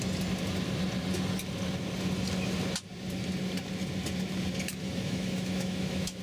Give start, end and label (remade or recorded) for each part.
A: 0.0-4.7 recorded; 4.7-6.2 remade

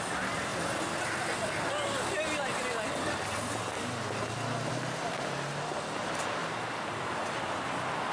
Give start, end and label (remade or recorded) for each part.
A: 0.0-8.1 recorded

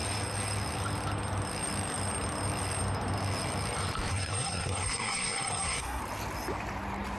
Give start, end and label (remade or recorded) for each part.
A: 0.0-4.1 recorded; 4.1-6.0 remade; 6.0-7.2 recorded

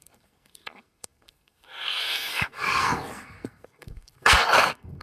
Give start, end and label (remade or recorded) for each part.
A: 0.0-5.0 remade